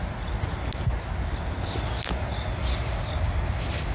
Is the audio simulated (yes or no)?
no